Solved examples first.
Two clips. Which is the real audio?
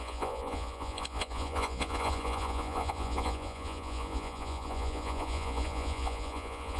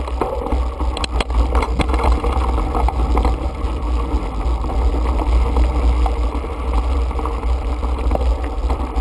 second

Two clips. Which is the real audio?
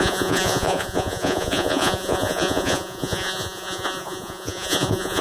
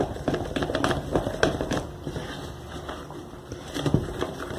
second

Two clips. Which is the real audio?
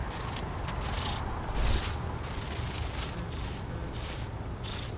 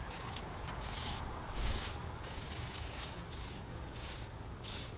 first